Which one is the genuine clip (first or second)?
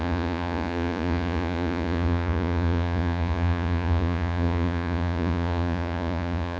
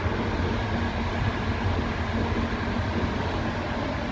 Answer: second